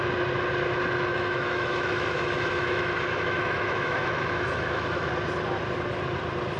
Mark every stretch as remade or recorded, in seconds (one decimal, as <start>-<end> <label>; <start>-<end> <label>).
0.0-1.1 recorded; 1.1-5.1 remade; 5.1-6.6 recorded